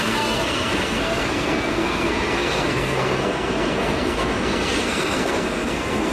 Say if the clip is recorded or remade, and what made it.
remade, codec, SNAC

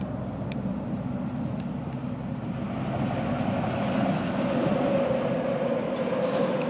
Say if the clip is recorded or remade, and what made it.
recorded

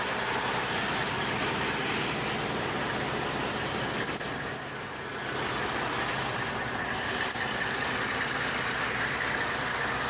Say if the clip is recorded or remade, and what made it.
recorded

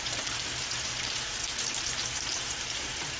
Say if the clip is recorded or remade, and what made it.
remade, vocoder, BigVGAN v2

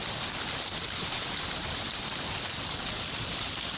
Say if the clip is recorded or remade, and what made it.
recorded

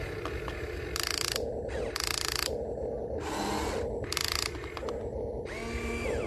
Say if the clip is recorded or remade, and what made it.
recorded